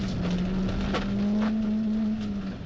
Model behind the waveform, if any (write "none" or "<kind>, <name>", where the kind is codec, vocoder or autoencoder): none